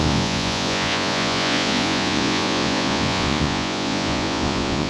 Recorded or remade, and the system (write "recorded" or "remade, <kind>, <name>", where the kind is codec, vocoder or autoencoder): remade, vocoder, Vocos